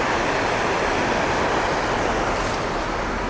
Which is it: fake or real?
real